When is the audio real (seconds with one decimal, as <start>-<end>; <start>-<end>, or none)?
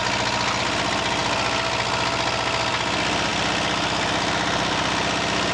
0.0-5.5